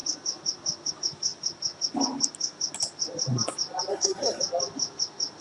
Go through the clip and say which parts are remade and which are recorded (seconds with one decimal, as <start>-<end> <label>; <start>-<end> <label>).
0.0-3.9 recorded; 3.9-4.4 remade; 4.4-5.4 recorded